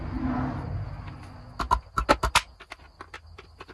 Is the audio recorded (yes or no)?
yes